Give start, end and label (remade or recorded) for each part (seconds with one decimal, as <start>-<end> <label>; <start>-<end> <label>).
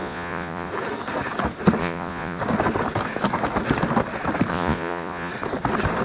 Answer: 0.0-0.7 remade; 0.7-1.8 recorded; 1.8-2.4 remade; 2.4-4.5 recorded; 4.5-5.3 remade; 5.3-6.0 recorded